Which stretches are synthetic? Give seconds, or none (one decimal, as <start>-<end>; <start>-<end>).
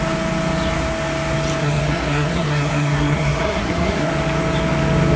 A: 1.6-4.1